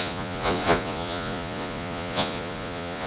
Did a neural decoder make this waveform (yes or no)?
yes